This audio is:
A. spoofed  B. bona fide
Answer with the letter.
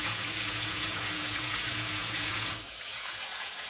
A